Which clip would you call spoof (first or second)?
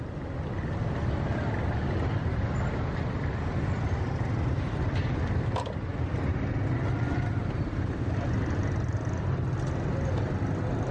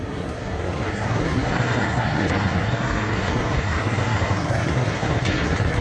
second